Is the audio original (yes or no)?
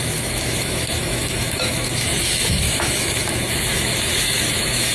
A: no